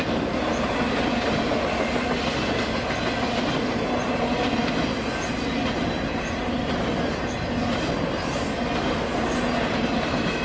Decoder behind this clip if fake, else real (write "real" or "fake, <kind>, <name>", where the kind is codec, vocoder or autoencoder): real